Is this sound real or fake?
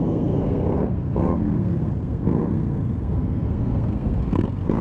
fake